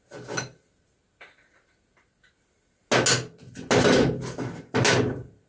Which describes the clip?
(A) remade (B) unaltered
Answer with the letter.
B